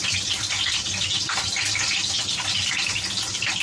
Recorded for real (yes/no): yes